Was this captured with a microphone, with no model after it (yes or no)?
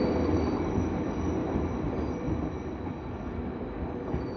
yes